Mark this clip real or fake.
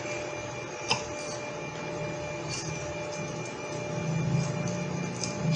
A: real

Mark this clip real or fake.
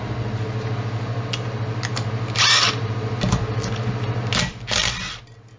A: real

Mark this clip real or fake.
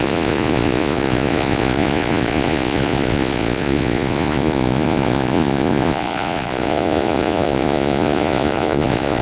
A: fake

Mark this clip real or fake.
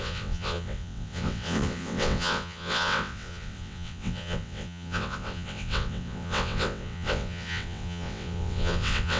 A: fake